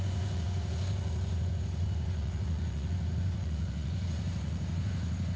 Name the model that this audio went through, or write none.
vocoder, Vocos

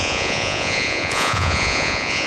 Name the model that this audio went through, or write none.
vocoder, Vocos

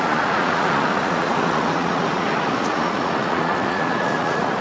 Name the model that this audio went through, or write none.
vocoder, Vocos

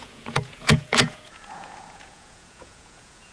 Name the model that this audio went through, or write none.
vocoder, Vocos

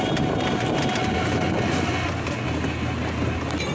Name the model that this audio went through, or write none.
none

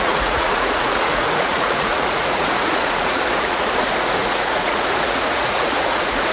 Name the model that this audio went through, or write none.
vocoder, Vocos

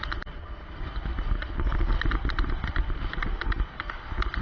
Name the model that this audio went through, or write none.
none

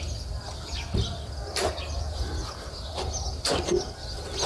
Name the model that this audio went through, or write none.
none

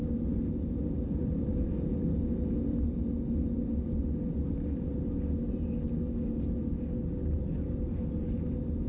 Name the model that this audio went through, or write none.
none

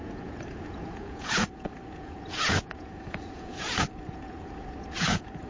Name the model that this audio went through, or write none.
vocoder, Vocos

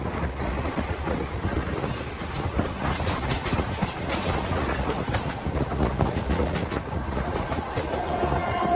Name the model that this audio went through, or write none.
vocoder, Vocos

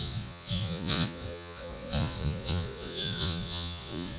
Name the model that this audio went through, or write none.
vocoder, Vocos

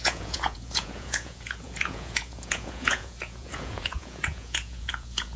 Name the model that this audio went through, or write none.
vocoder, Vocos